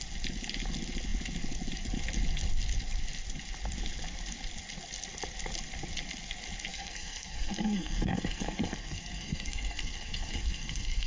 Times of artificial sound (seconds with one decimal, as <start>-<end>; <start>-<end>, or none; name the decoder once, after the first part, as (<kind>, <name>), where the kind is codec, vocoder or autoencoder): 6.7-11.1 (codec, SNAC)